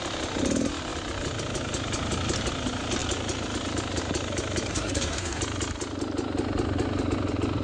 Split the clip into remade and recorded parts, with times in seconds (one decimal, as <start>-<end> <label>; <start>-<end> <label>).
0.0-4.7 recorded; 4.7-5.4 remade; 5.4-7.6 recorded